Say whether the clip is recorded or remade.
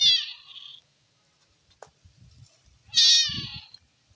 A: recorded